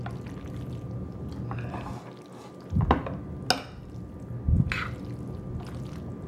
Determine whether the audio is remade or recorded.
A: recorded